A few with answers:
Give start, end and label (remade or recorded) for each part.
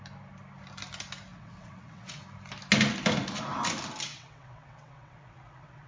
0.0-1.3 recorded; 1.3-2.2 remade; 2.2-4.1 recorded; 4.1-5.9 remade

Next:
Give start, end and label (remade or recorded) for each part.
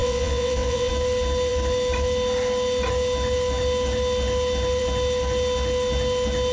0.0-0.9 remade; 0.9-6.5 recorded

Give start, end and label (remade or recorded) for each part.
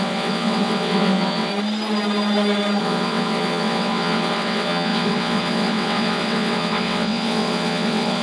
0.0-1.5 remade; 1.5-2.8 recorded; 2.8-8.2 remade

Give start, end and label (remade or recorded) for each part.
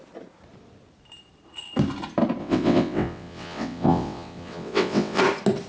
0.0-2.4 recorded; 2.4-5.2 remade; 5.2-5.7 recorded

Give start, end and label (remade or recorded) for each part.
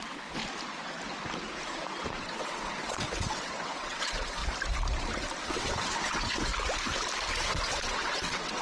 0.0-0.4 remade; 0.4-2.2 recorded; 2.2-4.4 remade; 4.4-5.5 recorded; 5.5-6.5 remade; 6.5-7.3 recorded; 7.3-8.6 remade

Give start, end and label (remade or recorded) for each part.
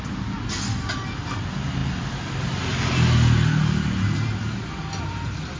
0.0-5.6 recorded